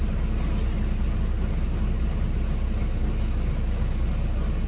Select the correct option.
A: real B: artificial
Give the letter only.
A